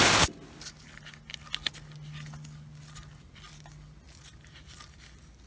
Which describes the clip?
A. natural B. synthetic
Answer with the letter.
A